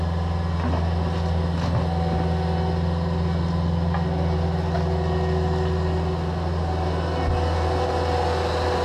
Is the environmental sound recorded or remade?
recorded